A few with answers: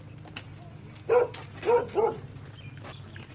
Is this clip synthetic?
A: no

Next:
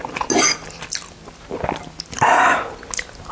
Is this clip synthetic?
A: no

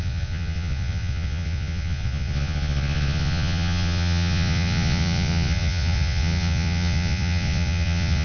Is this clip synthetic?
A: yes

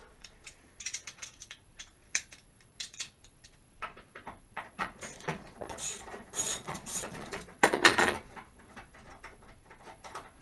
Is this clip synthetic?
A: yes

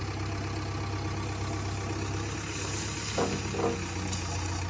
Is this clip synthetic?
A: no